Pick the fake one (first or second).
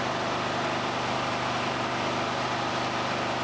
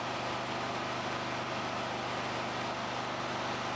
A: first